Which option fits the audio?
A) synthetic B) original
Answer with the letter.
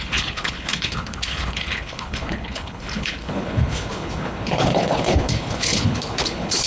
A